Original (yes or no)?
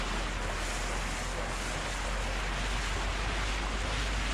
yes